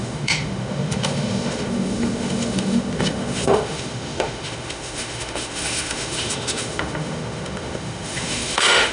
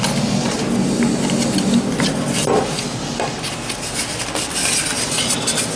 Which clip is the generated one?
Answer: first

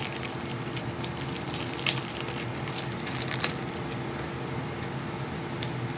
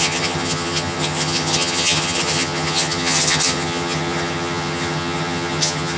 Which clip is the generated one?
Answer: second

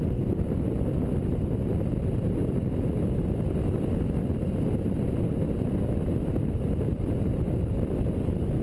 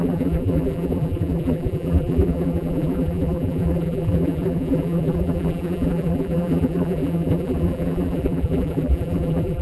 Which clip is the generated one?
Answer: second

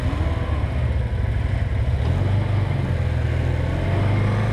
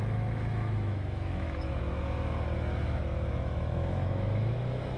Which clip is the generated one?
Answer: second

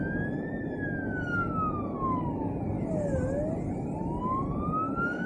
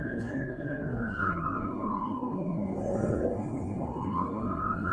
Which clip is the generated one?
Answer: second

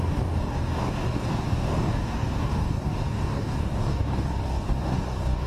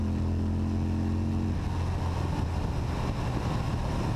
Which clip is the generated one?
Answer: first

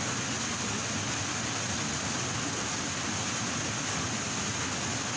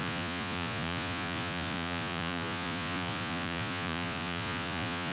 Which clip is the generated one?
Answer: second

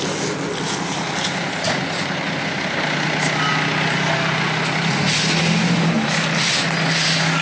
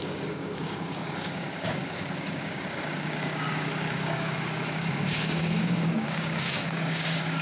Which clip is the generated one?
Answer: second